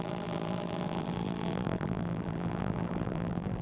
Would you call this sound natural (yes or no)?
no